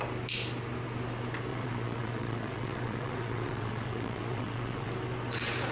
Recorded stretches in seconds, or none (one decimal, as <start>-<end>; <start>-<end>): 0.0-1.5; 4.9-5.7